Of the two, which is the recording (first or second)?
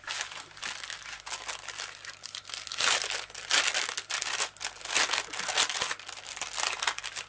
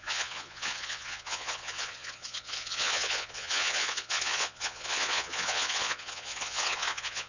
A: first